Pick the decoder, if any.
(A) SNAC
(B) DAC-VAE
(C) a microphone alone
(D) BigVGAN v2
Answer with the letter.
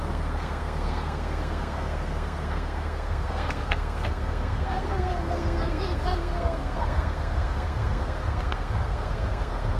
A